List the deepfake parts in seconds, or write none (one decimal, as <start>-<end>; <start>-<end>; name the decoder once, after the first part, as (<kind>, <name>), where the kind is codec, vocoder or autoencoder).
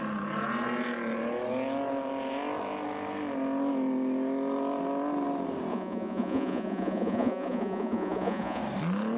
5.7-8.6 (vocoder, Vocos)